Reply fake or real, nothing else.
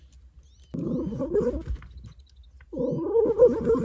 real